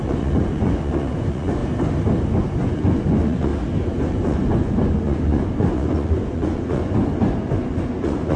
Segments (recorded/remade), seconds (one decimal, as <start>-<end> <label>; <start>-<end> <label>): 0.0-1.6 remade; 1.6-2.4 recorded; 2.4-3.5 remade; 3.5-4.1 recorded; 4.1-8.4 remade